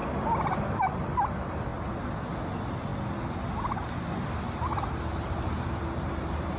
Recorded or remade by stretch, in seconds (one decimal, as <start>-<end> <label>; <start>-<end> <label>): 0.0-0.8 recorded; 0.8-1.7 remade; 1.7-2.3 recorded; 2.3-2.9 remade; 2.9-4.3 recorded; 4.3-6.6 remade